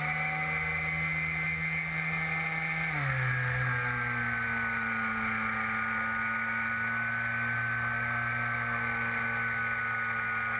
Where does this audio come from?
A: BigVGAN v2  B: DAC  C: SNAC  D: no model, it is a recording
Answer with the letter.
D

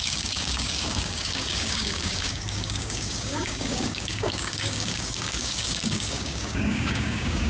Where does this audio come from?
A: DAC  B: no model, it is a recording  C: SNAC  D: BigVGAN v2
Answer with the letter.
A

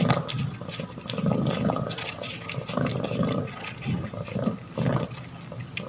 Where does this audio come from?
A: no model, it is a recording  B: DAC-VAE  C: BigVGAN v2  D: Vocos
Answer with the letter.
A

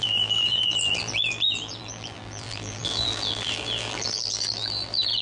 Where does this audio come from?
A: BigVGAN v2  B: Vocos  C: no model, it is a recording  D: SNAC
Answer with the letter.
A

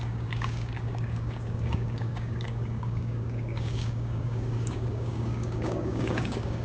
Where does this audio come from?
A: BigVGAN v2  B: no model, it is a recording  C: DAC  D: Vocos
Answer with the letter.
C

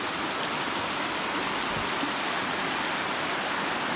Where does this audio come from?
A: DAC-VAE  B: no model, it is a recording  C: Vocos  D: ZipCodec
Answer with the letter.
B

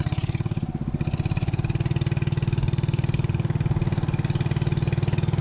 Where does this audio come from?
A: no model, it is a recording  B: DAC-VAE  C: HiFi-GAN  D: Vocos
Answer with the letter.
A